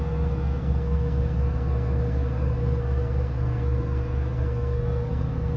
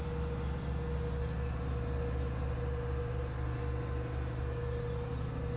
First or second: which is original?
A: second